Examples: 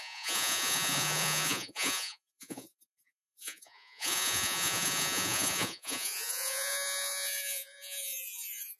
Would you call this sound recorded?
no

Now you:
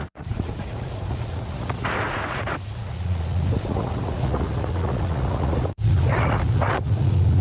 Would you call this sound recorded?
no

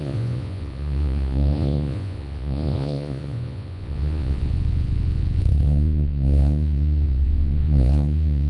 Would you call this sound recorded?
no